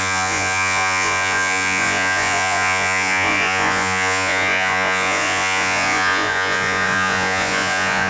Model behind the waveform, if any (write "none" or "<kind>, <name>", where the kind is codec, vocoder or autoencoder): vocoder, Vocos